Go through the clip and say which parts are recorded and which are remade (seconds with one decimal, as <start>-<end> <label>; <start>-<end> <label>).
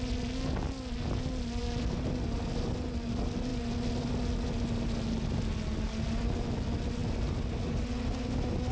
0.0-8.7 recorded